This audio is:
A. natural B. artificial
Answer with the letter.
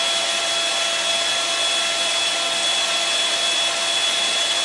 A